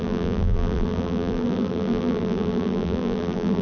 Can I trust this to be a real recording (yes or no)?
no